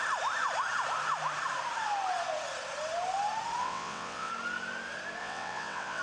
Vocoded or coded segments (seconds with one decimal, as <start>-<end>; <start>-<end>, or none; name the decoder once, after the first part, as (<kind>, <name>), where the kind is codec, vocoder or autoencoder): 3.6-4.3 (vocoder, WaveNeXt); 5.2-6.0